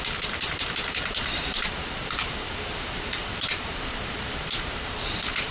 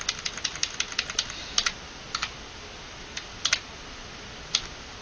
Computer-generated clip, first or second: first